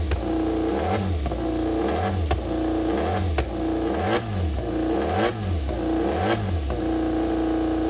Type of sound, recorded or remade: recorded